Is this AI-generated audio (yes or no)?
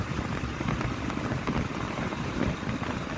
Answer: yes